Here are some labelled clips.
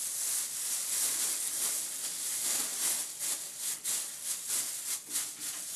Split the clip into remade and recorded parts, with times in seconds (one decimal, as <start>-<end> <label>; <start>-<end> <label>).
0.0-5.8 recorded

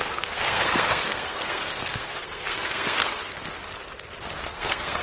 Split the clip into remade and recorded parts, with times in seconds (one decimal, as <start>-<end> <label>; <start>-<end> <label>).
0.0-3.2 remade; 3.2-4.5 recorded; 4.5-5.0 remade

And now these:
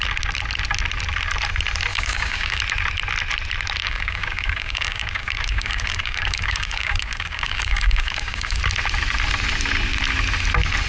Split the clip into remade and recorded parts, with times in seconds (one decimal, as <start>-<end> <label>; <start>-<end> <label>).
0.0-1.9 recorded; 1.9-2.6 remade; 2.6-3.8 recorded; 3.8-8.6 remade; 8.6-10.9 recorded